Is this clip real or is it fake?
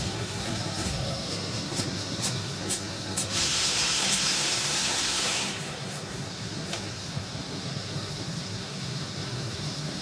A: fake